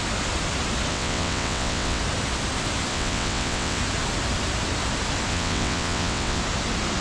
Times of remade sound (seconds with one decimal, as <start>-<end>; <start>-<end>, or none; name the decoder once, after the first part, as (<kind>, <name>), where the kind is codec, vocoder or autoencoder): 0.9-2.0 (vocoder, WaveNeXt); 2.9-3.8; 5.3-6.4